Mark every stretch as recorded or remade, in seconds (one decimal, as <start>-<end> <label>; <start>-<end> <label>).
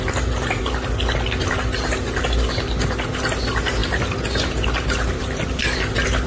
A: 0.0-6.3 recorded